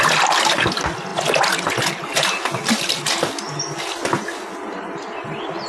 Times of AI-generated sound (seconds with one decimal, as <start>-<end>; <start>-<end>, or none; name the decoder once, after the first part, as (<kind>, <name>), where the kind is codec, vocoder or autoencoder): none